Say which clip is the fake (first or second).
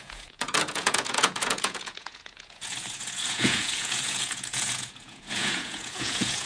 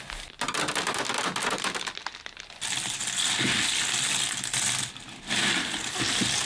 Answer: first